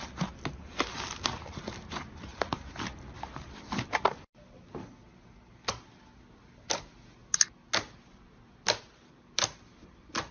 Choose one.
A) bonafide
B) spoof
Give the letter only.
A